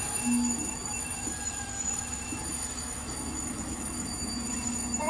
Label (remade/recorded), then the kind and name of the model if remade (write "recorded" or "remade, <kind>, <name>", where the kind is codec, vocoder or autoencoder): remade, autoencoder, DAC-VAE